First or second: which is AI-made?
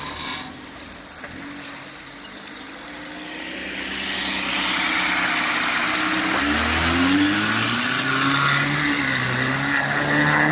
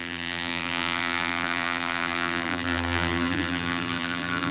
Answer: second